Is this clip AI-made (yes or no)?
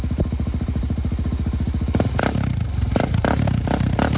yes